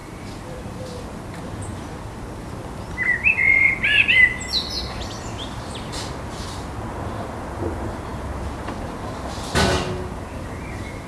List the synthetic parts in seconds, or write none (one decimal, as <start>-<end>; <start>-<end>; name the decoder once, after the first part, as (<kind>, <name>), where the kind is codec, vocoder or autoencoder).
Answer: 0.0-0.8 (vocoder, BigVGAN v2)